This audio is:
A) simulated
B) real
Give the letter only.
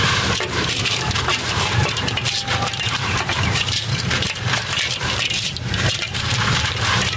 A